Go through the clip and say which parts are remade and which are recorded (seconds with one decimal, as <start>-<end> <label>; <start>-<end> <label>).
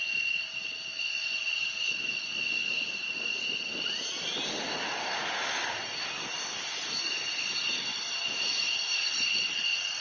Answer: 0.0-10.0 recorded